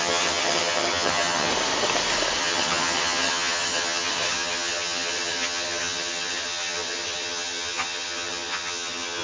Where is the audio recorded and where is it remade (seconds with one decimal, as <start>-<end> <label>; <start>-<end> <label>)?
0.0-1.5 remade; 1.5-2.4 recorded; 2.4-9.2 remade